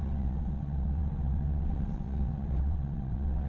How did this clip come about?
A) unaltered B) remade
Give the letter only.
B